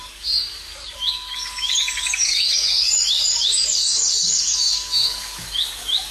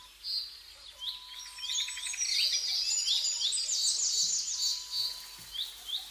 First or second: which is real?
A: second